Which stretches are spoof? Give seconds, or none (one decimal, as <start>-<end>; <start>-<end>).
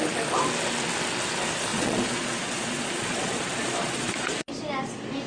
1.7-4.5